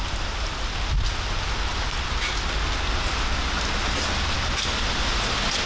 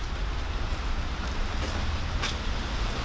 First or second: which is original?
first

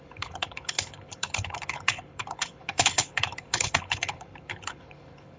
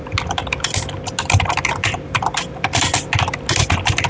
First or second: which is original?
second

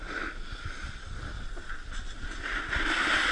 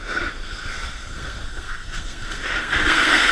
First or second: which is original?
first